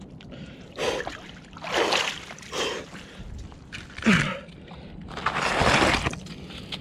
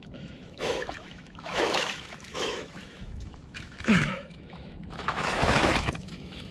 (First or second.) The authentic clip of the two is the first